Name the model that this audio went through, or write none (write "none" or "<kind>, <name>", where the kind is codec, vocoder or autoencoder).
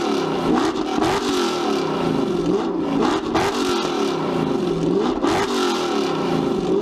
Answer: none